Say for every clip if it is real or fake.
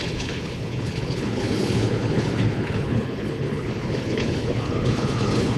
fake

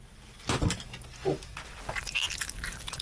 real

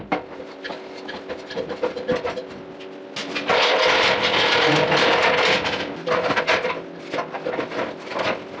real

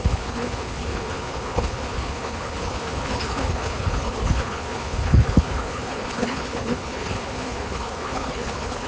fake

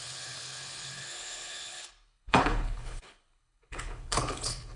fake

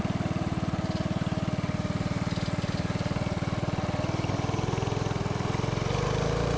real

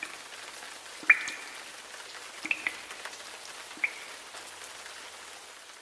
real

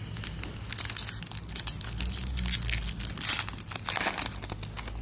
real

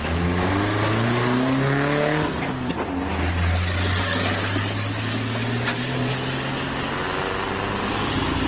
real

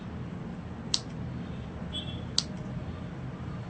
real